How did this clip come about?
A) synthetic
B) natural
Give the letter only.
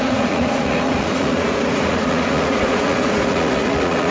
A